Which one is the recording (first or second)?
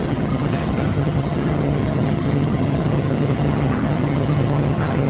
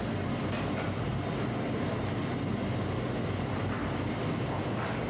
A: second